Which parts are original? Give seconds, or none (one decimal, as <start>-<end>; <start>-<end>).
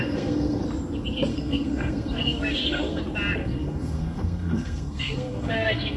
0.6-1.3; 3.0-3.4